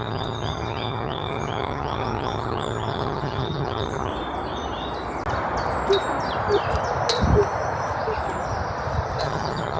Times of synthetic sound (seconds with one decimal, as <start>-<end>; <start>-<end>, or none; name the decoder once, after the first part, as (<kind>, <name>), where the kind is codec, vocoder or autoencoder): 0.0-4.1 (vocoder, HiFi-GAN); 9.2-9.8